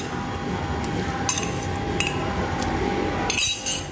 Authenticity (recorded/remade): recorded